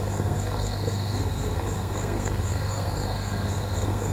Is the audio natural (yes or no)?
no